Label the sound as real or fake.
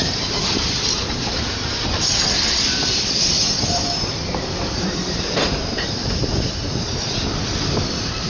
fake